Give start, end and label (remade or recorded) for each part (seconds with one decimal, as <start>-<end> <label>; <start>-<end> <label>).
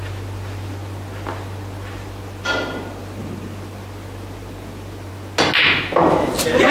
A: 0.0-5.6 recorded; 5.6-6.3 remade; 6.3-6.7 recorded